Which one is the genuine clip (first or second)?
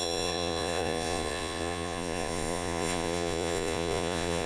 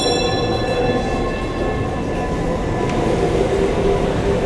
second